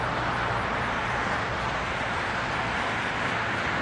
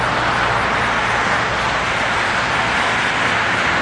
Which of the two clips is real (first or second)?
second